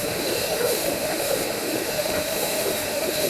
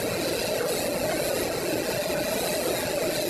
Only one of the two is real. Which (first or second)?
second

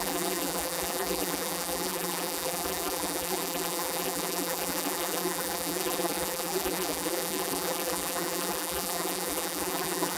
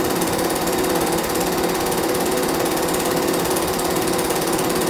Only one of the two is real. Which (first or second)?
second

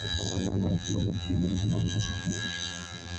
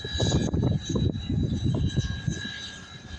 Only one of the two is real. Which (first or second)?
second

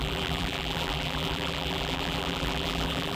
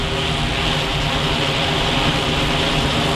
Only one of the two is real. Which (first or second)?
second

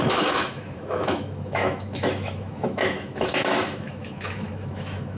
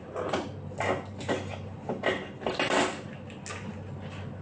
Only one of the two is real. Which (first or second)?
second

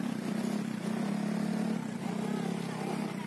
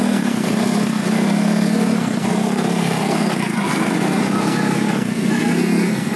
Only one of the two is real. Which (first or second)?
first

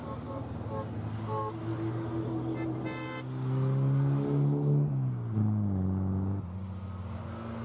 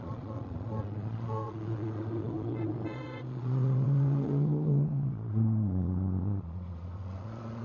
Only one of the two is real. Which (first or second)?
first